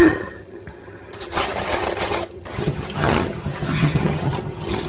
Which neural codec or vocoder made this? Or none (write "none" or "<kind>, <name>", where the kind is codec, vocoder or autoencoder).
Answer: vocoder, HiFi-GAN